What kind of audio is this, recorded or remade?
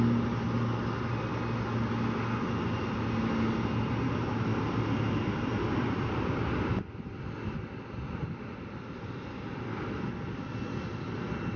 recorded